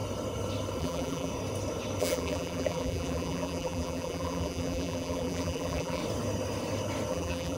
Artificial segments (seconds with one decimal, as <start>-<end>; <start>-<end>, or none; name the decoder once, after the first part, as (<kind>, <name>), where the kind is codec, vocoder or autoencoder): 0.8-1.3 (vocoder, BigVGAN v2); 2.0-6.0; 7.1-7.6